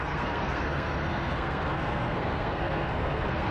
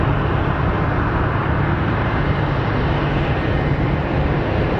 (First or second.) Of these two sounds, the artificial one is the first